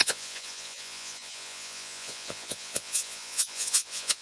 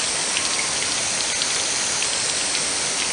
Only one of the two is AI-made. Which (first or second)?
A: first